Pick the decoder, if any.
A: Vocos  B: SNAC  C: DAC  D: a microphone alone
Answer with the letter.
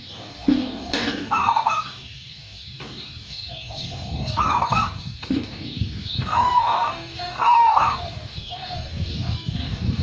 C